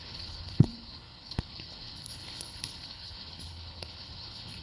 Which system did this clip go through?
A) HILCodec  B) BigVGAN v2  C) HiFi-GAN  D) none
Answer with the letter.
A